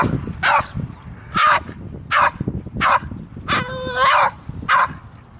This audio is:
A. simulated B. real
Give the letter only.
B